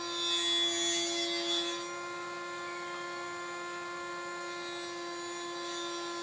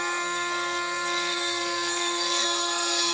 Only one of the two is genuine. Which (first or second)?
first